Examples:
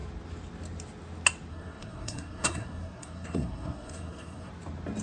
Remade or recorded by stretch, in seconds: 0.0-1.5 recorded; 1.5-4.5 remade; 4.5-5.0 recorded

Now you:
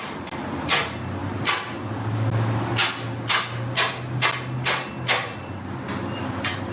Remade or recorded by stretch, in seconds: 0.0-6.7 recorded

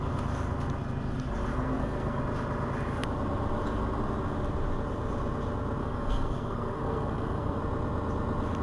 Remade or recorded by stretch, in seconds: 0.0-1.5 recorded; 1.5-2.2 remade; 2.2-5.8 recorded; 5.8-7.6 remade; 7.6-8.6 recorded

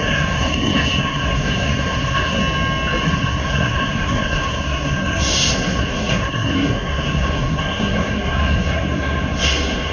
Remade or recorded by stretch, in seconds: 0.0-2.4 remade; 2.4-3.0 recorded; 3.0-9.9 remade

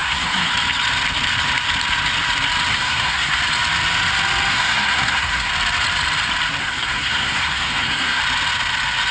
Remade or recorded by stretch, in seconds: 0.0-0.5 remade; 0.5-2.7 recorded; 2.7-3.4 remade; 3.4-4.5 recorded; 4.5-5.5 remade; 5.5-6.6 recorded; 6.6-8.2 remade; 8.2-9.1 recorded

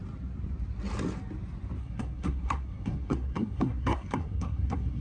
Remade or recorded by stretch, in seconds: 0.0-1.8 recorded; 1.8-5.0 remade